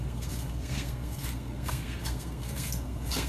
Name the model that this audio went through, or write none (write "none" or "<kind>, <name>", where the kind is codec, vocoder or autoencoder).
codec, SNAC